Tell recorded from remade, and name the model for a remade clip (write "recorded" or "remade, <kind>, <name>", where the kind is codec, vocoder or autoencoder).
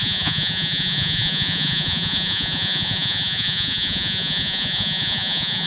remade, vocoder, Vocos